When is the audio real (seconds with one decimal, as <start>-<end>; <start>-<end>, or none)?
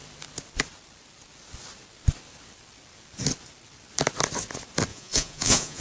0.0-4.9